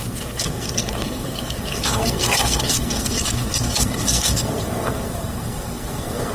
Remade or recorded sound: remade